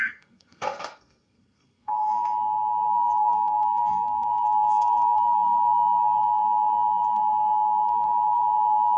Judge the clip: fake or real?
fake